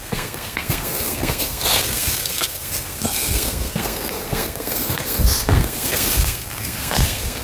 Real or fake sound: fake